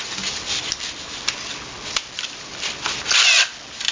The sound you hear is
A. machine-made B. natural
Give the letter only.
B